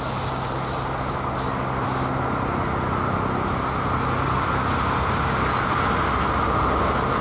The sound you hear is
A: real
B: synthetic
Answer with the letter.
A